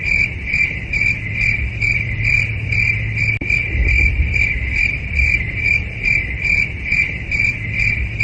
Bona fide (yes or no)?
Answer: no